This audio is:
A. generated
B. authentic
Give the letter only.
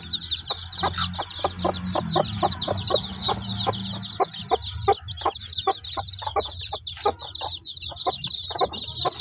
B